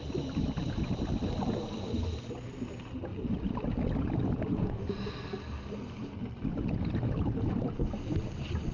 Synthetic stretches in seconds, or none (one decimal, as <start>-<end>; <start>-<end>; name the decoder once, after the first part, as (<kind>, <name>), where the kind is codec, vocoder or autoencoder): none